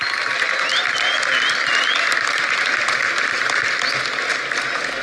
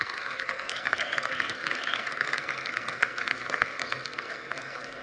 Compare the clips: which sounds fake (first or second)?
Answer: second